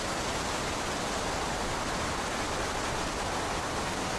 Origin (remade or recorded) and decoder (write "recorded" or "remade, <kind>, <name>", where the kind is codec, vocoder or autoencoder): recorded